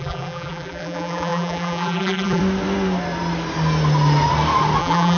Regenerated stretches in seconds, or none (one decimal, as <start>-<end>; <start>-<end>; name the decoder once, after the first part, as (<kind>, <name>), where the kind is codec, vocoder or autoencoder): 0.0-2.4 (vocoder, BigVGAN v2); 4.8-5.2